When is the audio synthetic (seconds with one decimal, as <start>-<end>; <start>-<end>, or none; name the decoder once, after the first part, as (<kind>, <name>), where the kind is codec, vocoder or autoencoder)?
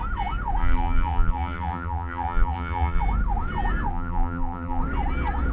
0.6-3.0 (vocoder, BigVGAN v2); 3.9-4.8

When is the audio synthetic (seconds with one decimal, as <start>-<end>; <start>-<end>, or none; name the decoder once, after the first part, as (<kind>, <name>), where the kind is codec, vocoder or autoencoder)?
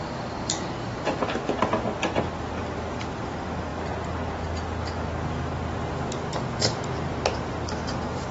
0.0-1.4 (vocoder, BigVGAN v2); 2.6-3.7; 5.9-8.3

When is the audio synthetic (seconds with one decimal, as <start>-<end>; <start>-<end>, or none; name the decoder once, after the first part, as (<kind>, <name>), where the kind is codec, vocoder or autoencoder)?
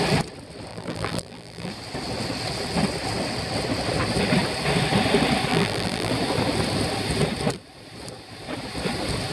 0.7-1.7 (vocoder, BigVGAN v2); 5.5-6.1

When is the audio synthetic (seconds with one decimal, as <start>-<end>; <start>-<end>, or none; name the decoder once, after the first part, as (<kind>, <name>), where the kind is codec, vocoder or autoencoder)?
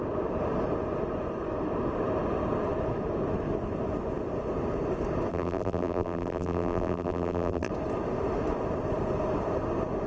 5.3-7.7 (vocoder, BigVGAN v2)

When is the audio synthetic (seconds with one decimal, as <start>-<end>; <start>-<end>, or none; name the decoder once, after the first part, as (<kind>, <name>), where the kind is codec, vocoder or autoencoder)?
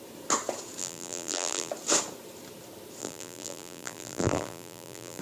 0.8-1.7 (vocoder, BigVGAN v2); 3.0-5.2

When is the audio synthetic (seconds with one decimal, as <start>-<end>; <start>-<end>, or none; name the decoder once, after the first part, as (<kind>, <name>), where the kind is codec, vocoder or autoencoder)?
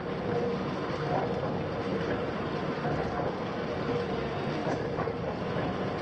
1.9-2.5 (vocoder, BigVGAN v2); 4.6-6.0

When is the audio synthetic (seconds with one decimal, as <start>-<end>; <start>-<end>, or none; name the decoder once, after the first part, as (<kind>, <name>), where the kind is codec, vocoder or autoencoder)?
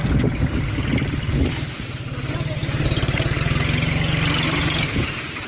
2.6-3.4 (vocoder, BigVGAN v2); 4.6-5.5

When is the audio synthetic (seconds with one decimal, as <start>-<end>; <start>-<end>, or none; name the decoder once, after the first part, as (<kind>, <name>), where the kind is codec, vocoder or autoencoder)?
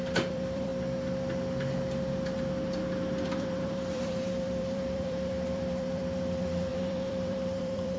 0.0-0.7 (vocoder, BigVGAN v2); 3.2-8.0